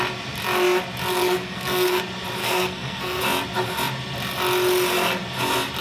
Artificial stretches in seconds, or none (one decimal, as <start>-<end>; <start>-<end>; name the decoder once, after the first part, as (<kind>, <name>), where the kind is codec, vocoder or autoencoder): 1.2-2.0 (codec, SNAC); 2.4-3.2